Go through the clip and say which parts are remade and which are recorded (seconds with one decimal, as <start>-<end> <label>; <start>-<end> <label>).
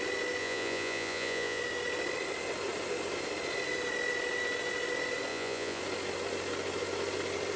0.0-0.4 recorded; 0.4-1.6 remade; 1.6-5.3 recorded; 5.3-5.8 remade; 5.8-7.6 recorded